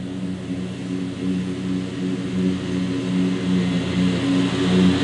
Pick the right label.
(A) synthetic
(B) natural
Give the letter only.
B